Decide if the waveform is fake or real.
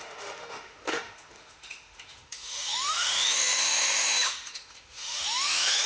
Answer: fake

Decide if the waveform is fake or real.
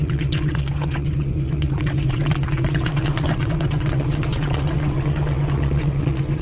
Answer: fake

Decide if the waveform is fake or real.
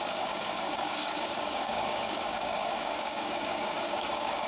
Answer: fake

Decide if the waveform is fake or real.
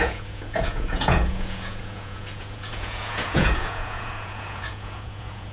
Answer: fake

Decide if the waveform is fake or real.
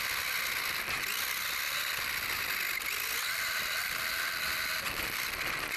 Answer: real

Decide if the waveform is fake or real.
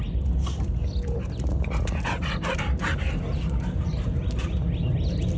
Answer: real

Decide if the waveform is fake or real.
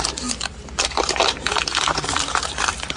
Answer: fake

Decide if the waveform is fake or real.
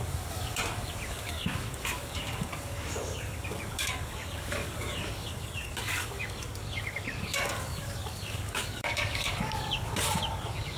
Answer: fake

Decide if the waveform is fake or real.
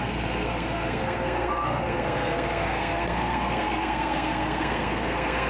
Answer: fake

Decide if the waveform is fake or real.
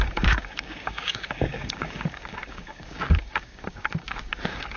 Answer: fake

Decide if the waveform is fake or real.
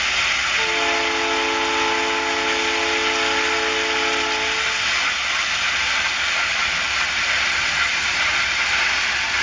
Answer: real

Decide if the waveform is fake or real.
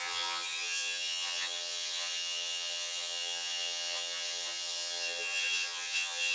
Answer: fake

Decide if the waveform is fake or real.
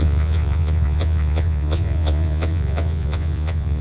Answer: fake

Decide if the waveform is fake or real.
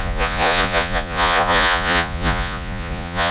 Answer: fake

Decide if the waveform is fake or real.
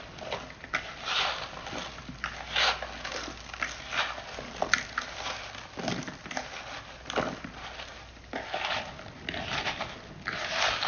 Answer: real